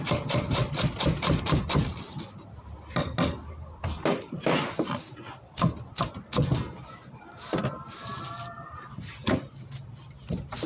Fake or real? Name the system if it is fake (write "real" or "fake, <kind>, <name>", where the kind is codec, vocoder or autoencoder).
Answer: real